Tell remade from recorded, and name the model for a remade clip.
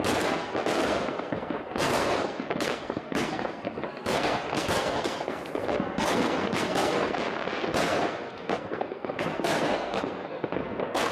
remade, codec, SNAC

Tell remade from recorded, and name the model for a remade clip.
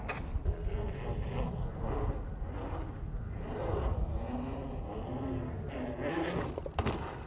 recorded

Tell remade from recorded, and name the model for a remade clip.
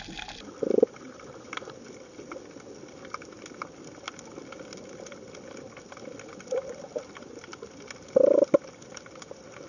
recorded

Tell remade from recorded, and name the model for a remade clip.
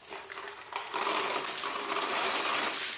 recorded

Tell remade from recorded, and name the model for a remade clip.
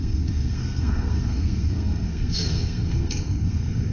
remade, codec, SNAC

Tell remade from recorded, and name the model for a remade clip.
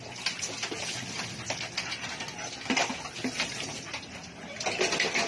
recorded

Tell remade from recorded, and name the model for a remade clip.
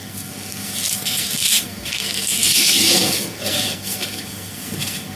remade, codec, SNAC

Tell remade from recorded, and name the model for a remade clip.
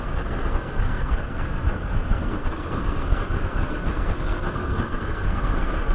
remade, codec, SNAC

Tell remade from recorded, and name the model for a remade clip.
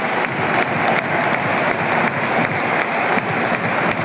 recorded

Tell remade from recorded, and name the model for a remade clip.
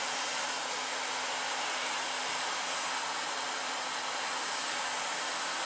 recorded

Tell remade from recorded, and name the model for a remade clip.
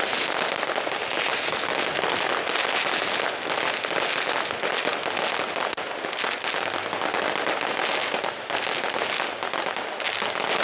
recorded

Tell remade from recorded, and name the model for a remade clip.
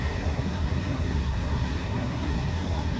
remade, codec, SNAC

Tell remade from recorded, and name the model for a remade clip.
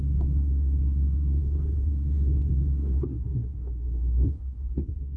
remade, codec, SNAC